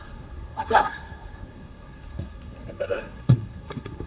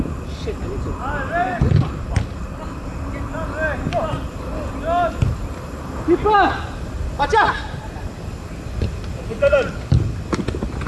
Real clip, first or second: second